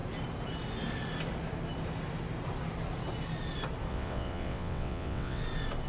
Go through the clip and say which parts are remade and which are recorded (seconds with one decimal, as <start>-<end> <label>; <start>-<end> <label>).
0.0-3.9 recorded; 3.9-5.4 remade; 5.4-5.9 recorded